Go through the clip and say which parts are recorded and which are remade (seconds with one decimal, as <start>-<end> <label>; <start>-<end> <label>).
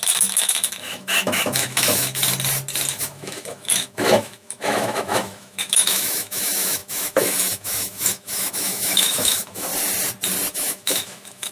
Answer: 0.0-2.2 remade; 2.2-2.9 recorded; 2.9-9.7 remade; 9.7-10.5 recorded; 10.5-11.5 remade